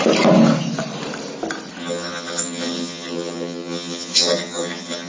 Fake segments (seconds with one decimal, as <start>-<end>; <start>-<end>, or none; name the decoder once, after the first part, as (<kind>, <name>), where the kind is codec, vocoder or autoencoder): 1.8-5.1 (vocoder, HiFi-GAN)